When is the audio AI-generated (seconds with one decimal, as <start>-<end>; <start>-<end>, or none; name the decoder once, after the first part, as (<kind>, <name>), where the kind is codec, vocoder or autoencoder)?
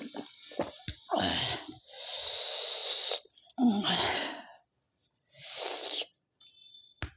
none